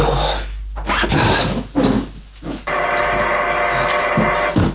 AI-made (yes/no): no